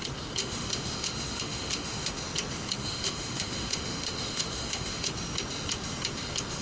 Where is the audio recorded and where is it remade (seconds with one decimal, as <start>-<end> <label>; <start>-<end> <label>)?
0.0-0.4 recorded; 0.4-2.1 remade; 2.1-2.8 recorded; 2.8-5.1 remade; 5.1-6.6 recorded